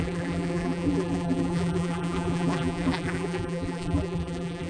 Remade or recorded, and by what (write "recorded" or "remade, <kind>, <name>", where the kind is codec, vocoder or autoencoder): remade, vocoder, BigVGAN v2